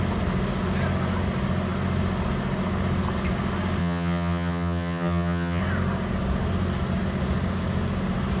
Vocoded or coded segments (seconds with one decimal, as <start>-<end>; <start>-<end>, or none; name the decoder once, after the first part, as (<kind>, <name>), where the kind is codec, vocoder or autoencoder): 3.8-5.6 (vocoder, HiFi-GAN)